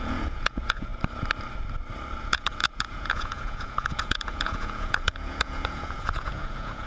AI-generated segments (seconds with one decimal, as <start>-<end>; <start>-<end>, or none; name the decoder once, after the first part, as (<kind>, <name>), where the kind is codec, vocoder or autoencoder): 0.0-0.9 (vocoder, Vocos); 2.2-6.9

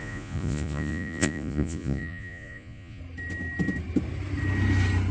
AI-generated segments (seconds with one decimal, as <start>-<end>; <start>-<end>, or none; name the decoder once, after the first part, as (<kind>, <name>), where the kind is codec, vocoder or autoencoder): 0.0-3.0 (vocoder, Vocos)